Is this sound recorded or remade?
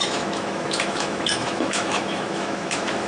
remade